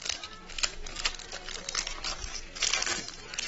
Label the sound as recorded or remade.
recorded